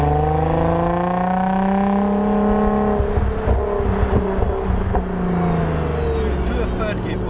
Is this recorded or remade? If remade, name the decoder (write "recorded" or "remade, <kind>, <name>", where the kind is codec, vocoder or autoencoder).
recorded